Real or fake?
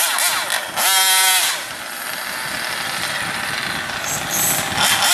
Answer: real